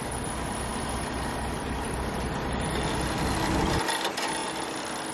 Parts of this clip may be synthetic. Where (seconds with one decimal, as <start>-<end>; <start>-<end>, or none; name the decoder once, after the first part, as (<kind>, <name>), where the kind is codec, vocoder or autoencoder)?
none